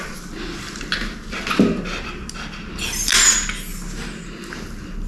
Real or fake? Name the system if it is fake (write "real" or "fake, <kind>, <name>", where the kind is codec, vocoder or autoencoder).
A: real